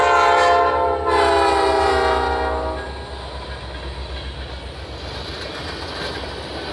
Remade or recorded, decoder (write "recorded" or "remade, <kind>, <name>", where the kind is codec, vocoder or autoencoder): recorded